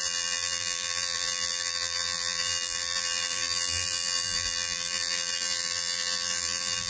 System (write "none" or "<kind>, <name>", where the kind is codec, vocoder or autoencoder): vocoder, BigVGAN v2